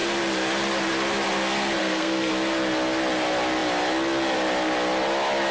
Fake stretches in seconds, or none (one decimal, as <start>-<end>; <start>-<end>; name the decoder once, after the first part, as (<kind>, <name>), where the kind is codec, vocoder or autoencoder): 1.8-2.3 (codec, SNAC)